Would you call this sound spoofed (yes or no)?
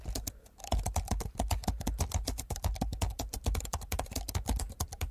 no